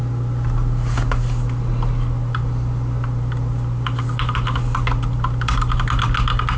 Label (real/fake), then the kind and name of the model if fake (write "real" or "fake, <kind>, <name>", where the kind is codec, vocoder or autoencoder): real